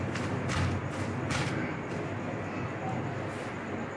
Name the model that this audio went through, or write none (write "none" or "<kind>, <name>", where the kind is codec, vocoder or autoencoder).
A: none